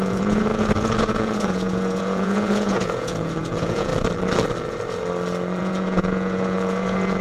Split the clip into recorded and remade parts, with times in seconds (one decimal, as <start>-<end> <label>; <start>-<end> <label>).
0.0-3.9 remade; 3.9-5.6 recorded; 5.6-7.2 remade

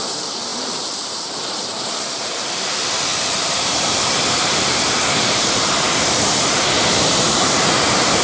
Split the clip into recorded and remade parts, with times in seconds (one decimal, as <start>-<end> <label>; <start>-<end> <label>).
0.0-8.2 remade